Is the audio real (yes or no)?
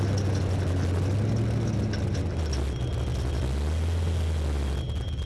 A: yes